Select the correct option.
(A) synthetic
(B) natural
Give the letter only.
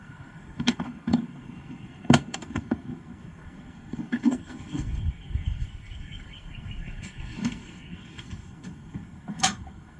A